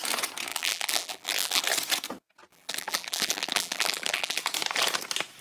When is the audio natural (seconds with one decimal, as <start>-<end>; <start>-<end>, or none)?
0.0-0.5; 1.6-2.5; 4.4-5.4